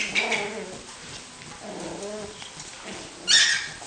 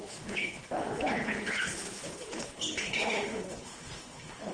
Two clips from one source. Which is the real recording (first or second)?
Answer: first